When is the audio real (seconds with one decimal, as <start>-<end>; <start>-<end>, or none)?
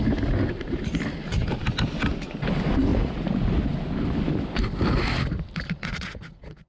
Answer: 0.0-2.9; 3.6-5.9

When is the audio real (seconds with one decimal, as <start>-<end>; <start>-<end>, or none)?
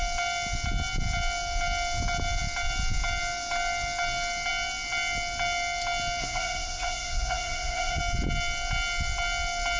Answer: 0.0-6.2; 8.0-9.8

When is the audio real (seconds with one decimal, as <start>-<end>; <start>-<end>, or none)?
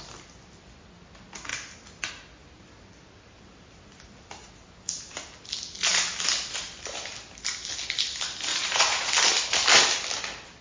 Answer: 0.0-8.5; 9.1-10.6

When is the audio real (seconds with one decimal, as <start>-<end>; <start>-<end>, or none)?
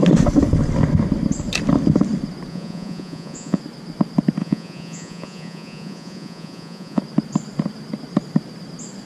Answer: 0.0-2.5; 3.6-4.4; 7.0-9.1